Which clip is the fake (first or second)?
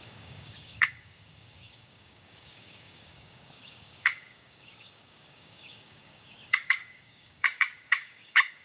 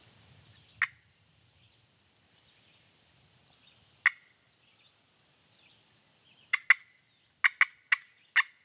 first